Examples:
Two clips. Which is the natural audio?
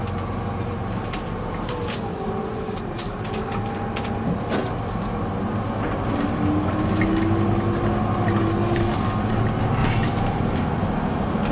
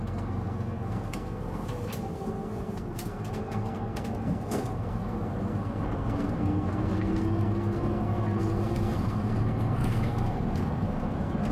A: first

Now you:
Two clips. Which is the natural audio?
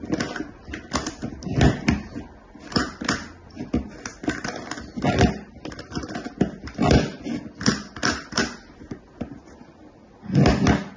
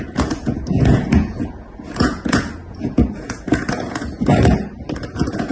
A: first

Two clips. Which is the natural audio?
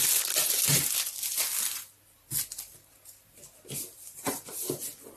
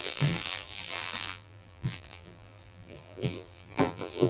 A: first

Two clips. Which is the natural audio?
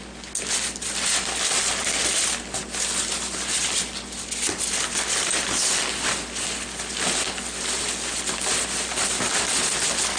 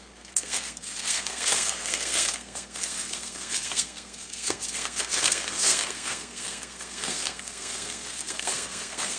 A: first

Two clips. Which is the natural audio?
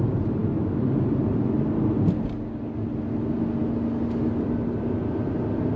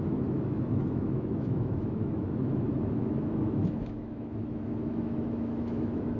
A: first